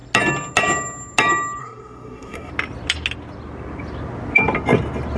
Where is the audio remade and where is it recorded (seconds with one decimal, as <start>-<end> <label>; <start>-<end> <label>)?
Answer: 0.0-1.6 recorded; 1.6-2.5 remade; 2.5-5.2 recorded